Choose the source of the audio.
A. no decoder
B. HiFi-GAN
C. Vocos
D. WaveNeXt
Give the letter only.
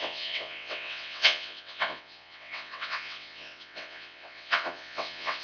D